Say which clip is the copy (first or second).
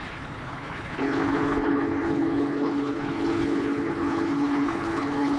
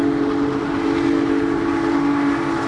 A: first